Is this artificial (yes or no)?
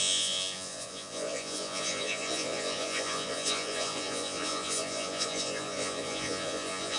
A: yes